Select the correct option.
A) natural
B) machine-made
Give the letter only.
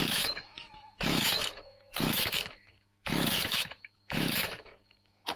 B